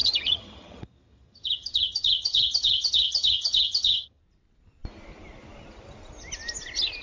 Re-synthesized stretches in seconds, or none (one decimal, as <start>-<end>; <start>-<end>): 0.0-4.2